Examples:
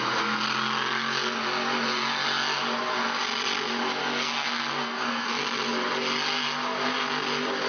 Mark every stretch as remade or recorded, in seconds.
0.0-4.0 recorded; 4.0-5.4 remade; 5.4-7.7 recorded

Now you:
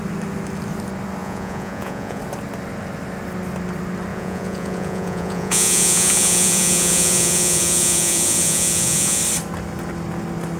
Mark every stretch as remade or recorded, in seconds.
0.0-1.2 recorded; 1.2-2.2 remade; 2.2-4.1 recorded; 4.1-9.2 remade; 9.2-10.6 recorded